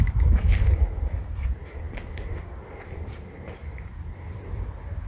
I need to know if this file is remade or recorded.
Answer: remade